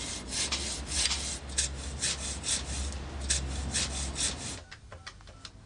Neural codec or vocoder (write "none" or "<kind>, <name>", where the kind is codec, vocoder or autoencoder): none